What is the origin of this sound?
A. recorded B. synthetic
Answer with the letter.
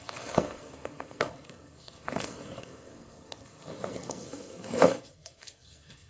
B